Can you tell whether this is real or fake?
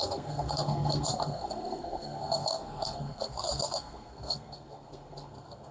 fake